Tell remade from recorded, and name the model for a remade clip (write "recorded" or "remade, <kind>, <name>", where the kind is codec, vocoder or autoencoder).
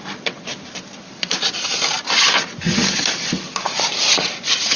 recorded